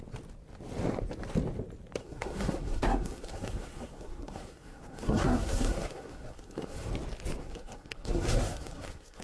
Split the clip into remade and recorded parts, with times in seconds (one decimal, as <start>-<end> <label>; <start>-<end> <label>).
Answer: 0.0-2.0 recorded; 2.0-6.9 remade; 6.9-7.4 recorded; 7.4-9.2 remade